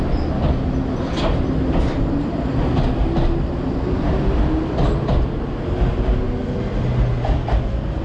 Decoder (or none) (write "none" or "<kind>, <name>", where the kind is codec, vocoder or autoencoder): none